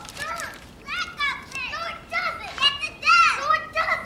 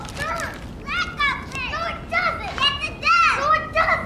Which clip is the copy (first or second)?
first